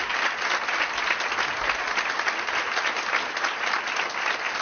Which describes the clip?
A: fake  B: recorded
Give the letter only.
B